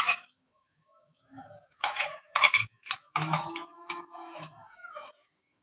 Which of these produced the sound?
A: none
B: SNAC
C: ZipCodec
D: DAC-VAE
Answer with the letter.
D